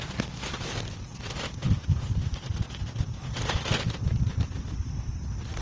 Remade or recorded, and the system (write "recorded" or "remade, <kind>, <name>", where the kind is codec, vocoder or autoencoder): recorded